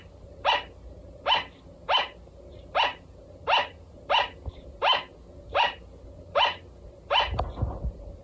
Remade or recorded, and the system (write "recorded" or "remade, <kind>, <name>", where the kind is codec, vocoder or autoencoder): recorded